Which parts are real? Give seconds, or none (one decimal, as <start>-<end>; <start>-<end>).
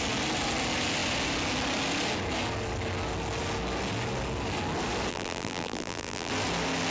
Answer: 0.0-5.1; 6.3-6.9